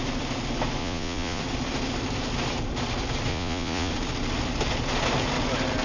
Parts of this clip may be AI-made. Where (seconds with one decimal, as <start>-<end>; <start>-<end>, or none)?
0.8-1.4; 3.3-3.9